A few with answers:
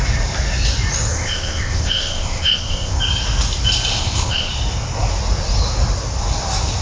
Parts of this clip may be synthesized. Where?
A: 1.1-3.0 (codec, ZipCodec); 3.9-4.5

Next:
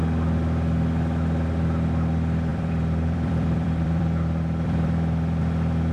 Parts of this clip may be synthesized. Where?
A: 2.5-5.4 (vocoder, BigVGAN v2)

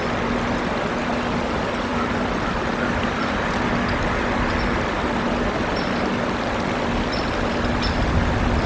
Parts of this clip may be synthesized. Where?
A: none

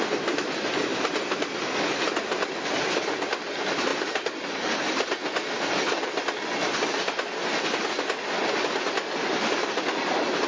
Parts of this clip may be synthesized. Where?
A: 0.9-2.1 (vocoder, BigVGAN v2)

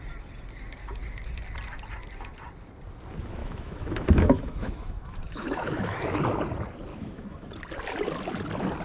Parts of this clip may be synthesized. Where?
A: 3.4-6.2 (autoencoder, DAC-VAE); 6.9-7.5

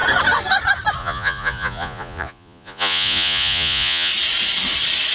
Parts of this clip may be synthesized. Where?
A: 1.0-4.1 (vocoder, Vocos)

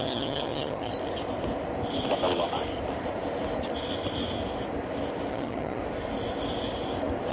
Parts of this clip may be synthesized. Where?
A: 0.0-0.9 (vocoder, HiFi-GAN); 5.3-5.8

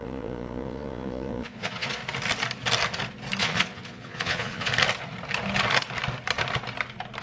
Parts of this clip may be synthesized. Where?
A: 0.0-2.0 (vocoder, Vocos); 3.4-4.7